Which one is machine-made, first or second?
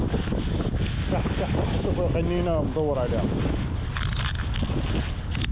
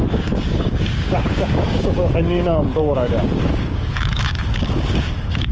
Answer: second